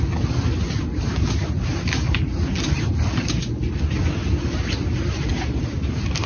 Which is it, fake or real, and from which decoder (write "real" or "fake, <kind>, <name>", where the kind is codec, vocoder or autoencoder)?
real